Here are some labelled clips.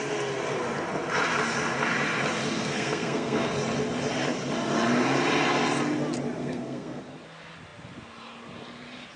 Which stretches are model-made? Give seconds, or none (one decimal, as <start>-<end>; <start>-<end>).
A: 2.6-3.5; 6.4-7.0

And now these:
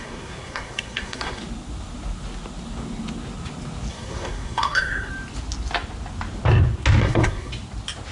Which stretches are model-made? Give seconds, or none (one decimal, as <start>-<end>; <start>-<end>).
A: 0.0-1.4; 3.9-5.1; 7.0-7.5

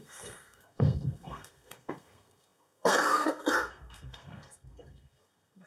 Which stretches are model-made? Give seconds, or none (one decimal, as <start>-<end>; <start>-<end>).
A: 0.0-5.7

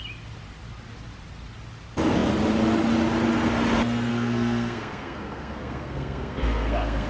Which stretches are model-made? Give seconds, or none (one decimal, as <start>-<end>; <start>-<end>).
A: 4.1-7.1

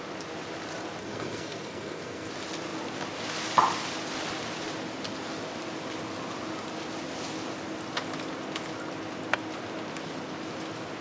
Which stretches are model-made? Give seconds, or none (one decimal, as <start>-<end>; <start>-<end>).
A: 1.0-2.3